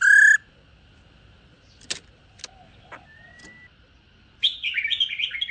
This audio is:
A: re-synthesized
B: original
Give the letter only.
B